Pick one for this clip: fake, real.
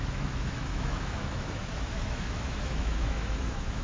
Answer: fake